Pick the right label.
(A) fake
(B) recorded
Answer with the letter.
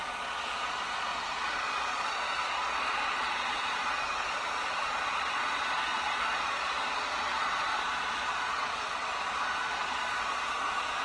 A